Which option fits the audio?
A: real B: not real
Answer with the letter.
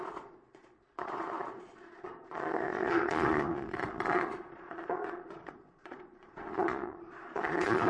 B